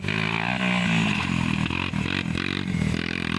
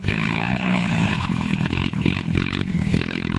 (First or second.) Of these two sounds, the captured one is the first